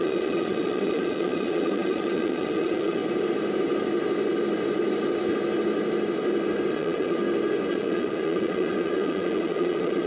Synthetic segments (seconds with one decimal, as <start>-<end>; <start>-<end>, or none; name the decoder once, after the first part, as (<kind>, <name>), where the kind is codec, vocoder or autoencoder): 0.0-3.0 (vocoder, Vocos); 6.7-7.2; 7.7-10.1